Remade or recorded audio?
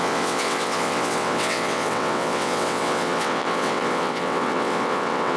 remade